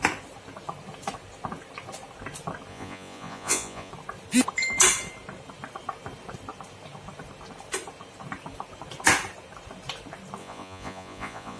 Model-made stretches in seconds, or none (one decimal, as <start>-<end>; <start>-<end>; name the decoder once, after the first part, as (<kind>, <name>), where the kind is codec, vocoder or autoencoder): 2.7-3.9 (vocoder, Vocos); 10.4-11.6